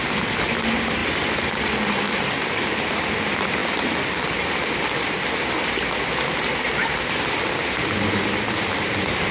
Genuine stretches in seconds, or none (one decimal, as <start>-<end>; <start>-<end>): 0.0-9.3